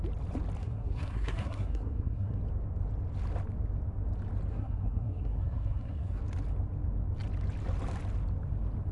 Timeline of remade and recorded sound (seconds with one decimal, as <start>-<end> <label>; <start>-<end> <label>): 0.0-0.6 recorded; 0.6-2.4 remade; 2.4-4.5 recorded; 4.5-6.2 remade; 6.2-8.9 recorded